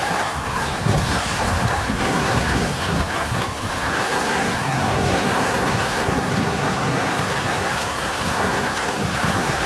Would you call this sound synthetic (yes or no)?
yes